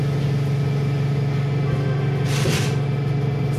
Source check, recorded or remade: recorded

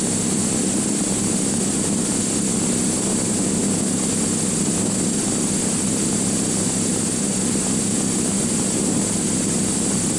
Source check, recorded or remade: recorded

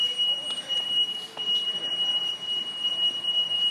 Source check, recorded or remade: remade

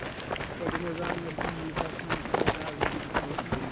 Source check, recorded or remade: recorded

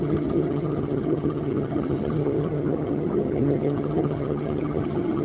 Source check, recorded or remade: remade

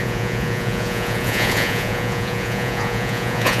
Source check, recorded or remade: remade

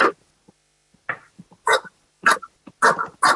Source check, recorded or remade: recorded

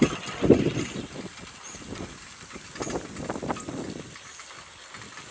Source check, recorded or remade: recorded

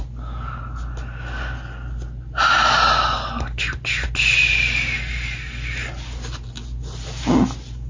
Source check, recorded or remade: recorded